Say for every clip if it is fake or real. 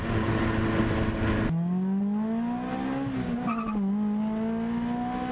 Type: real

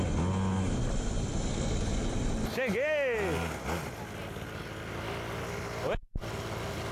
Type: real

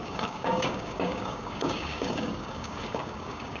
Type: fake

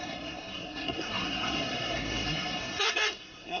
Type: fake